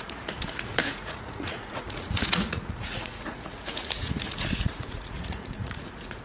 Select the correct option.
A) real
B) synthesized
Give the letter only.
B